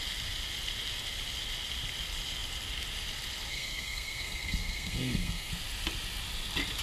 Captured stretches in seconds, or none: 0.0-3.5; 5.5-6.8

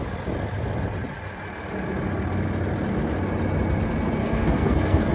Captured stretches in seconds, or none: 0.0-4.2

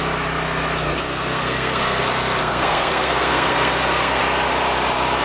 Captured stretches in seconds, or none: 0.0-1.1; 2.0-2.4; 4.2-5.2